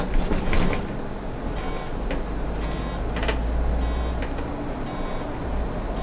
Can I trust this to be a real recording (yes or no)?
yes